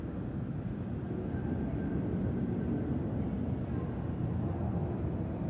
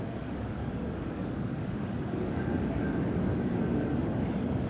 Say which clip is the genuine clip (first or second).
first